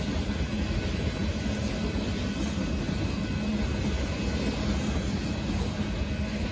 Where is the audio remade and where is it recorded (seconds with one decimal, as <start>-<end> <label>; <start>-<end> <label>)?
0.0-6.5 recorded